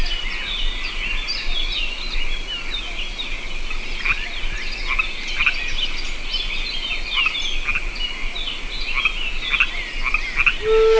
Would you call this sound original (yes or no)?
yes